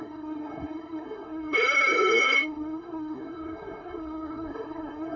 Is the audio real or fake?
fake